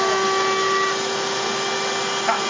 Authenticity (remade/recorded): recorded